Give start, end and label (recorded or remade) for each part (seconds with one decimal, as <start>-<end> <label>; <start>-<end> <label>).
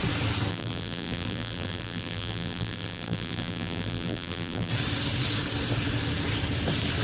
0.0-0.5 recorded; 0.5-4.7 remade; 4.7-7.0 recorded